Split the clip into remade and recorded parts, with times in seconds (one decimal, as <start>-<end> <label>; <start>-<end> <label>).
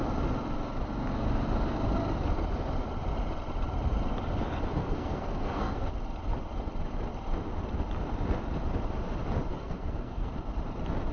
0.0-4.8 recorded; 4.8-5.9 remade; 5.9-9.5 recorded; 9.5-10.3 remade; 10.3-11.1 recorded